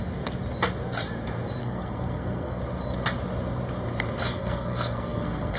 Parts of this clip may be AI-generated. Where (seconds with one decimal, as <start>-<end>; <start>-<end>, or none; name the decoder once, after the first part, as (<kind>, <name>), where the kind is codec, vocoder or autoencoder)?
1.6-2.6 (codec, SNAC); 4.3-5.6